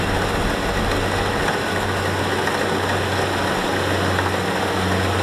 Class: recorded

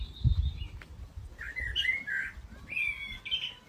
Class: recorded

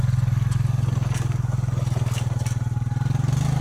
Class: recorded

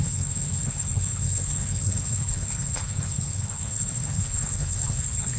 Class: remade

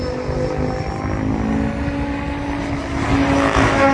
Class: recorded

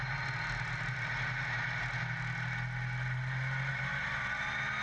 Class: recorded